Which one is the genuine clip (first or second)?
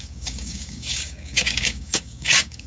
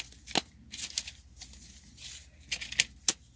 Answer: second